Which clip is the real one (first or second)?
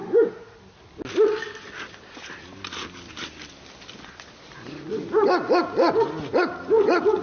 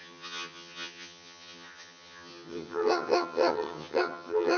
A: first